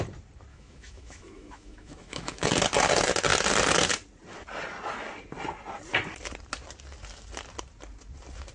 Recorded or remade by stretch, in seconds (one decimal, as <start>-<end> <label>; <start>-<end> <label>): 0.0-0.5 recorded; 0.5-2.5 remade; 2.5-8.5 recorded